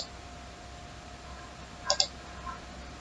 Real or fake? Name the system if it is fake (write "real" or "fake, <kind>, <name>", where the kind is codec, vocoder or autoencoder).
real